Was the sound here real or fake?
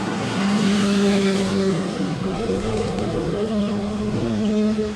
fake